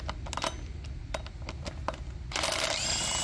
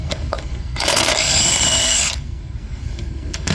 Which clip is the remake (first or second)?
second